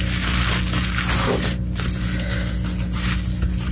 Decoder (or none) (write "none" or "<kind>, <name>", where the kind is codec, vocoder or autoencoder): none